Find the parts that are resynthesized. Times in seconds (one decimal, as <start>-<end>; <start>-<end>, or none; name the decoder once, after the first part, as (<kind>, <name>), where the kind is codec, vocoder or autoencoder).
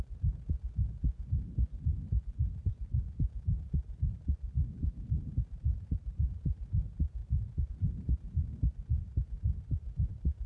none